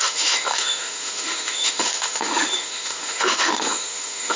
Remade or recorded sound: remade